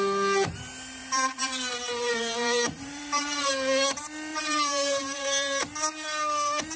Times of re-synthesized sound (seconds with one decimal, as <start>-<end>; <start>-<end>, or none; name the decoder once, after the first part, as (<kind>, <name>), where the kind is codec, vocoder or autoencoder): 1.0-3.5 (vocoder, BigVGAN v2); 4.3-5.6